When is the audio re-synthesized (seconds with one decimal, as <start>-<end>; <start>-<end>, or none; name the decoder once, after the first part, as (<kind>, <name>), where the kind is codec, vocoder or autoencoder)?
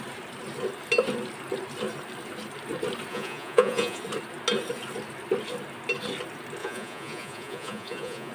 3.1-4.0 (vocoder, Vocos); 6.6-8.3